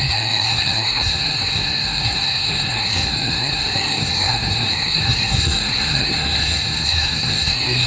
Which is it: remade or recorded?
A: remade